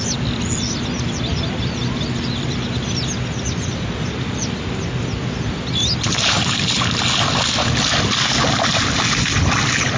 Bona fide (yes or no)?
yes